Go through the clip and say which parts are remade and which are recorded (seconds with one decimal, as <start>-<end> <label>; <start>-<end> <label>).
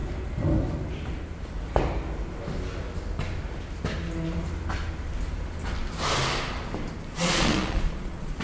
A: 0.0-7.1 recorded; 7.1-8.4 remade